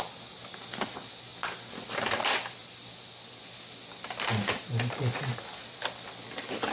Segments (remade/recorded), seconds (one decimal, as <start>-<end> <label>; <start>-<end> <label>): 0.0-6.7 recorded